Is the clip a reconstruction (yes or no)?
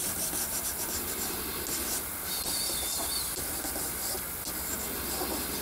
no